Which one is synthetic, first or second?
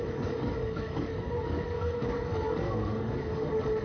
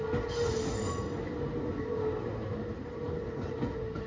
first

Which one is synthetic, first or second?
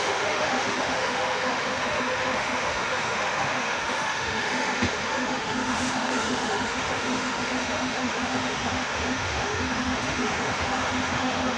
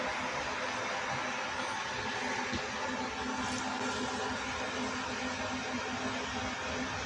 first